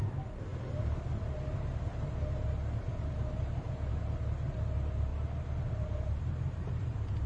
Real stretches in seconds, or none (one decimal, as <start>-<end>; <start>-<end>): 0.0-7.3